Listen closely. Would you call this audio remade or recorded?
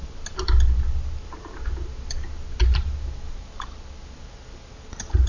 recorded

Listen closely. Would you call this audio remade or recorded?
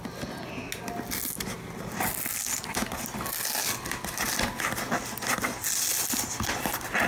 recorded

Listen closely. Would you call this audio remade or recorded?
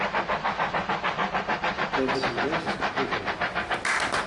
recorded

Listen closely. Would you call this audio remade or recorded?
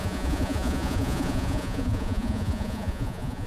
remade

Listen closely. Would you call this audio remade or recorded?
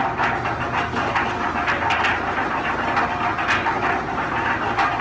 recorded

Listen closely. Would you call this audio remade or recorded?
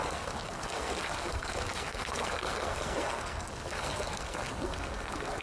remade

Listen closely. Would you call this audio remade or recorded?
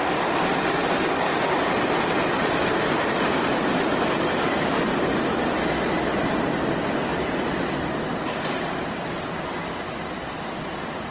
recorded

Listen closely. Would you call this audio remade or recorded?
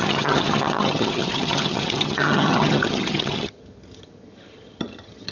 remade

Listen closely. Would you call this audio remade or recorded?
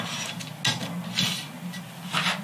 recorded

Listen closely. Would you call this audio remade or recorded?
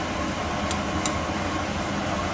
recorded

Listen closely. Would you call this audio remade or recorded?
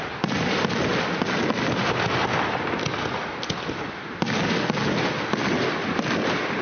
recorded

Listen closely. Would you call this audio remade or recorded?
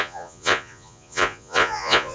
remade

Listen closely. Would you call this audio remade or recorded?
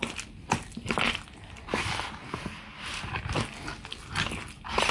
recorded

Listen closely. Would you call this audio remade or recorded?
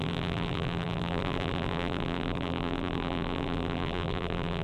remade